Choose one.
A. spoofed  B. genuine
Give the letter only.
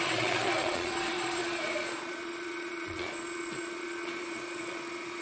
A